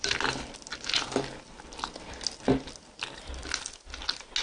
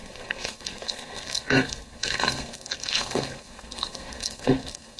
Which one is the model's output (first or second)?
second